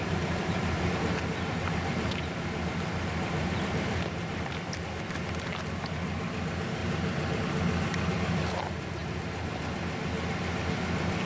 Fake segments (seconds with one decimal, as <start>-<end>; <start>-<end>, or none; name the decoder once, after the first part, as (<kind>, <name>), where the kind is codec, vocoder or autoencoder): 0.0-4.6 (vocoder, BigVGAN v2); 6.8-7.4; 9.0-9.6